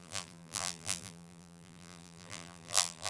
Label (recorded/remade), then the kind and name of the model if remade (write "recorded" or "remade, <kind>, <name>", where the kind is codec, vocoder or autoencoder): remade, vocoder, BigVGAN v2